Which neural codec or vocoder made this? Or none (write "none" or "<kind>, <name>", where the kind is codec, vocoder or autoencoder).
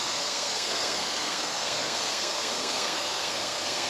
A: codec, SNAC